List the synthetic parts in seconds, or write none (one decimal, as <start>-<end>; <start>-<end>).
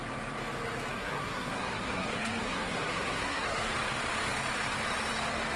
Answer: 0.9-3.7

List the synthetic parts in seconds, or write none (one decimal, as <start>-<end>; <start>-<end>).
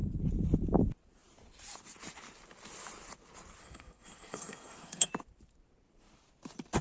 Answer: 3.6-5.1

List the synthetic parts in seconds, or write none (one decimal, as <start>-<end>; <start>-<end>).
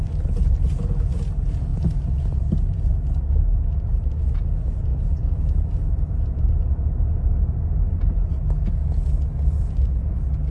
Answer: none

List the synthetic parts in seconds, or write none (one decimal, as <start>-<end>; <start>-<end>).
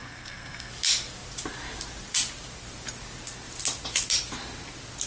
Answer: 0.0-0.7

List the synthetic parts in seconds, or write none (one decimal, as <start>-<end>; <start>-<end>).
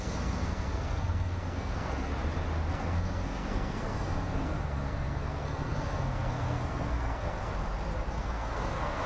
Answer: 0.0-2.1; 2.7-7.5; 8.1-9.1